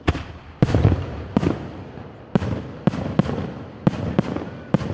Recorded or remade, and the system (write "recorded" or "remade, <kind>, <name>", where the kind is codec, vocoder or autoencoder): recorded